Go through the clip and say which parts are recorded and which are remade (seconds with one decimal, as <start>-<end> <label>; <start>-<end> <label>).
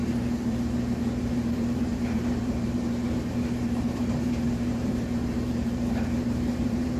0.0-1.2 recorded; 1.2-7.0 remade